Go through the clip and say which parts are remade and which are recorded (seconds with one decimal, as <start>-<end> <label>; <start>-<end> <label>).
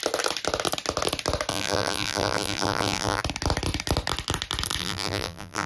0.0-1.5 recorded; 1.5-3.2 remade; 3.2-4.8 recorded; 4.8-5.7 remade